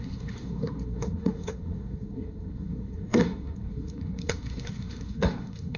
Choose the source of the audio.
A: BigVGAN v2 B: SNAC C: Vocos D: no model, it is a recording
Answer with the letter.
B